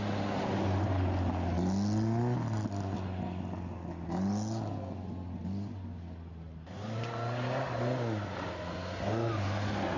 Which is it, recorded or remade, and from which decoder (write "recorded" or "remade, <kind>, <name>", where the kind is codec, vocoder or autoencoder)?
recorded